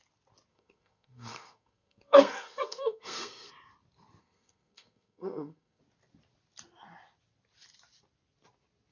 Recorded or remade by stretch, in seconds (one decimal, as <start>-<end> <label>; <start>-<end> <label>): 0.0-0.5 recorded; 0.5-3.5 remade; 3.5-4.2 recorded; 4.2-5.8 remade; 5.8-8.9 recorded